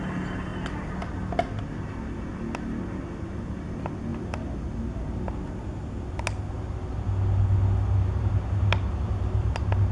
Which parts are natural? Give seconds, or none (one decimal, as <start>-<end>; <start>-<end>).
0.0-9.9